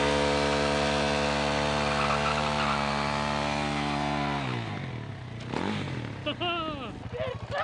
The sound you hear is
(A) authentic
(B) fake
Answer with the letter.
A